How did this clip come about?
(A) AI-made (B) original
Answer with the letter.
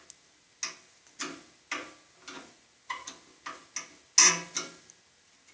B